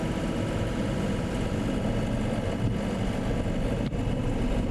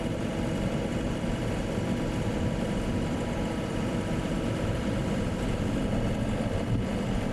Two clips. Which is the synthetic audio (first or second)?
second